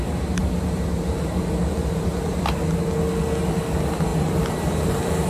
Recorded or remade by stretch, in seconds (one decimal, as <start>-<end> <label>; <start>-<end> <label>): 0.0-5.3 recorded